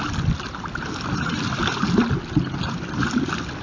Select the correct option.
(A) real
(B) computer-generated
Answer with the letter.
A